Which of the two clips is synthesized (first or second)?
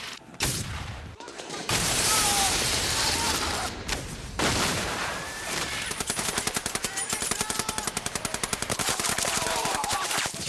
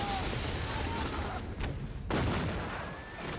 first